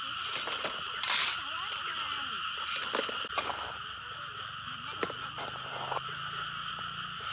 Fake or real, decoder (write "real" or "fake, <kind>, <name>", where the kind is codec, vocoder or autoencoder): real